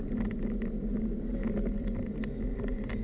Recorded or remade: recorded